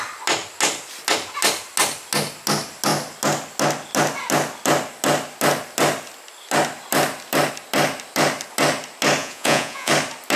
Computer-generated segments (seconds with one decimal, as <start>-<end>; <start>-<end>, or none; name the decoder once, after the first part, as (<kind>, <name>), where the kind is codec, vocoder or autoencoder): 9.2-9.9 (vocoder, Vocos)